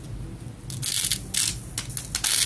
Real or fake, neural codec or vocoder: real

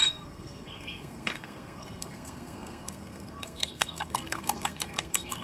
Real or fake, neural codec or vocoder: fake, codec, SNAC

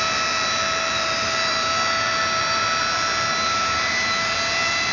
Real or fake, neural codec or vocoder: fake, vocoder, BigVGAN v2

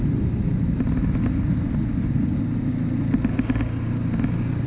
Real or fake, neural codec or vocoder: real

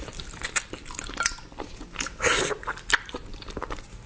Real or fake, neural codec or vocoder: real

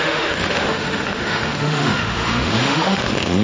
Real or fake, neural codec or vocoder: fake, autoencoder, DAC-VAE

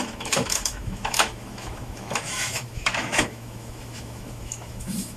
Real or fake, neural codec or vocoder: fake, autoencoder, DAC-VAE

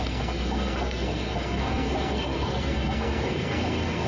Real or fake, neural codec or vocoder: fake, codec, SNAC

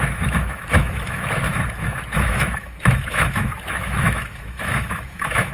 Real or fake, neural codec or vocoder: fake, autoencoder, DAC-VAE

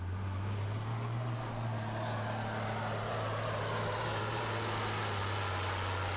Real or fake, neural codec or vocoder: real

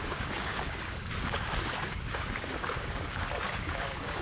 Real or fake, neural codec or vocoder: fake, codec, DAC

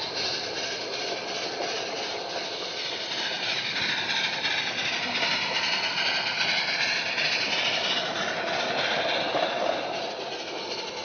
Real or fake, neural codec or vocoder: real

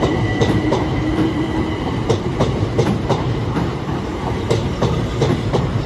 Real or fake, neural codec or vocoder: fake, vocoder, BigVGAN v2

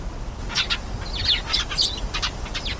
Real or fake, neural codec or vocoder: real